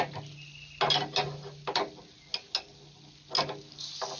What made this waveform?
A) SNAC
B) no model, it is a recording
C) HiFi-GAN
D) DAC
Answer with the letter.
B